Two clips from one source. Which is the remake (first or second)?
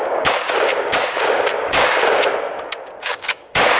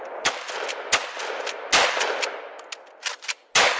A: first